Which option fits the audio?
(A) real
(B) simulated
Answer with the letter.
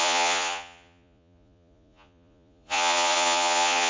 B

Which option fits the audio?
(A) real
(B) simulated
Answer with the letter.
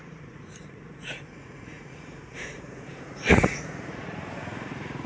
B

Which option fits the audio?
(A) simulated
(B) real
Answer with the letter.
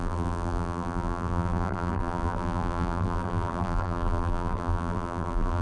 A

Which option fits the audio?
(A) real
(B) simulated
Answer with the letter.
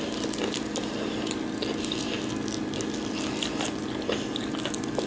A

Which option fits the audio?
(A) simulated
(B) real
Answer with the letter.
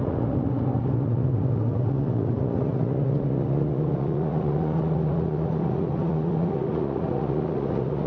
A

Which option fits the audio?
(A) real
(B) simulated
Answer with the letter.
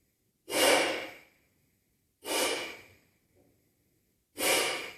A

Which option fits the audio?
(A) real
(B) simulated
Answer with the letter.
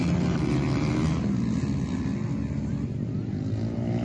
A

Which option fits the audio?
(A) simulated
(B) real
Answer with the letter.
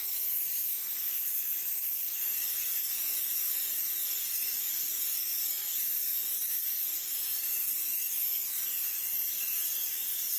A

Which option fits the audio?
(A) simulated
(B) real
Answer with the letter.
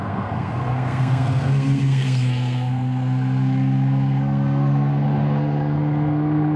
A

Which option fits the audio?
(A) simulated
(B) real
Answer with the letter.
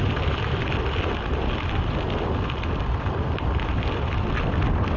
B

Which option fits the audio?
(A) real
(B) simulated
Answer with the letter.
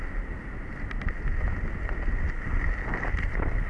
A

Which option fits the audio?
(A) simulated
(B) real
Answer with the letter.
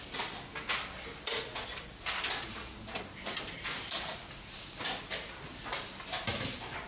B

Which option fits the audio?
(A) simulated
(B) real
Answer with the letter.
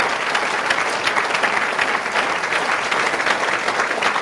B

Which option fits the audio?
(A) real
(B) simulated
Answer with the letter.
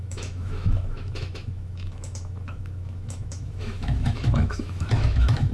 B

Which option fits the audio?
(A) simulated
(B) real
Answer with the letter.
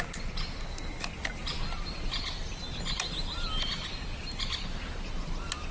B